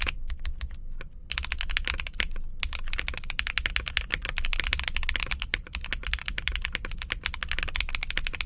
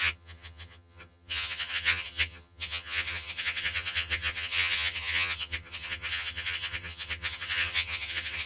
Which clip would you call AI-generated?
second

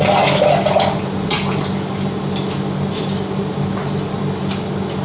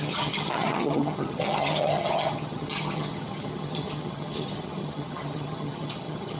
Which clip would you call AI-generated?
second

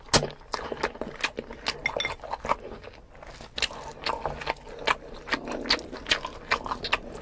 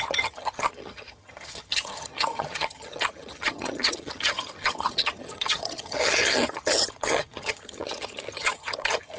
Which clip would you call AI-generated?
second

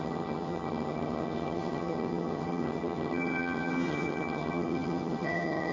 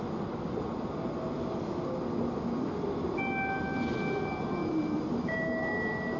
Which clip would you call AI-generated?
first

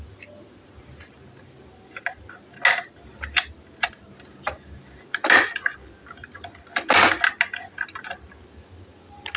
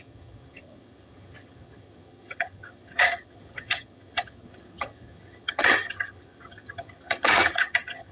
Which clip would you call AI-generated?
second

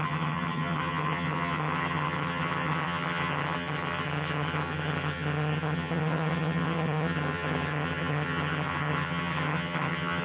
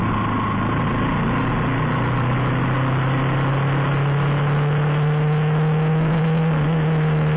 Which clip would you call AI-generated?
first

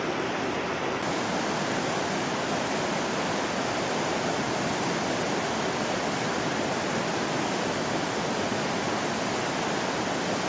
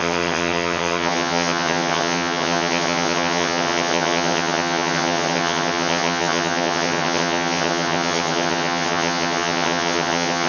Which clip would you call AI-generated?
second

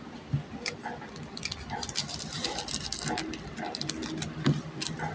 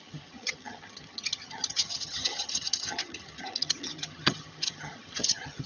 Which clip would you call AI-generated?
second